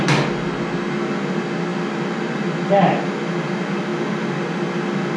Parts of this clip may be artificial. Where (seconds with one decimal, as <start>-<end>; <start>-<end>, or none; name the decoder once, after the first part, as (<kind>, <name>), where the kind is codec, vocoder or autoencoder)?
none